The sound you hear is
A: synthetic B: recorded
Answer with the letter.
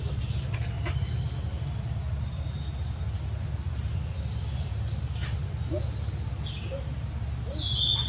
B